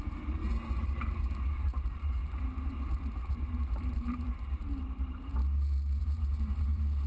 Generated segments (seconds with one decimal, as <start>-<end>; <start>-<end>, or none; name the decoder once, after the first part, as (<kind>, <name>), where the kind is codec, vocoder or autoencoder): 0.0-2.2 (vocoder, BigVGAN v2); 3.3-5.4; 6.0-7.1